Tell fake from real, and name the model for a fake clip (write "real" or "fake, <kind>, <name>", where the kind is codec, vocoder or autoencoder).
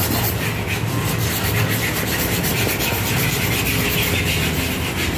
real